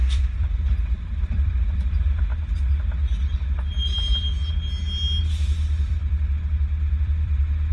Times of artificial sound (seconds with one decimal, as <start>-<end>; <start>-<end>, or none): 0.0-2.3; 5.2-6.0; 7.0-7.7